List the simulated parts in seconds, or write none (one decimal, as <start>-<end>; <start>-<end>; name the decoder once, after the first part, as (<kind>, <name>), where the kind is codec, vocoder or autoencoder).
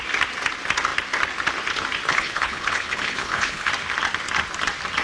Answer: 2.1-3.7 (codec, HILCodec)